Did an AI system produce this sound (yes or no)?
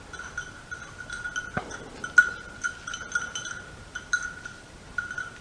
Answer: no